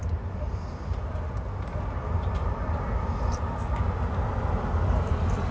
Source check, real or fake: real